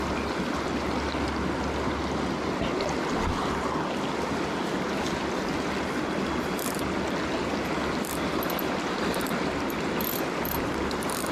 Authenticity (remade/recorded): recorded